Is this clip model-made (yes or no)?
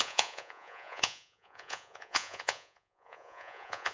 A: yes